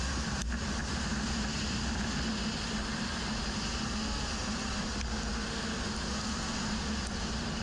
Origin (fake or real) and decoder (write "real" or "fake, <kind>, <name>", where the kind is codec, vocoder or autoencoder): real